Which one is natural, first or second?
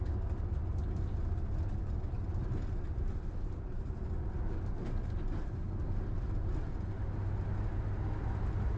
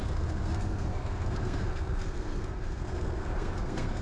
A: first